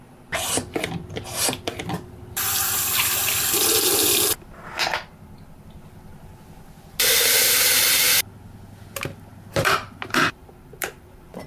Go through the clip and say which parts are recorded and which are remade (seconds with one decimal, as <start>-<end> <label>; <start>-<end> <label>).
0.0-9.3 recorded; 9.3-11.5 remade

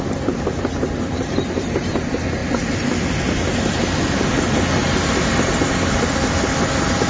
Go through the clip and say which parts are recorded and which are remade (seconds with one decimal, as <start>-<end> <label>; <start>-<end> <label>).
0.0-2.4 remade; 2.4-7.1 recorded